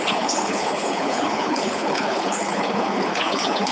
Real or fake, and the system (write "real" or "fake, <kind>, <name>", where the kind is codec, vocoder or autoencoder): fake, codec, HILCodec